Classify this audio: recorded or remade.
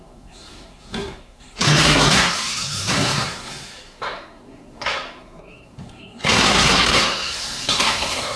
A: remade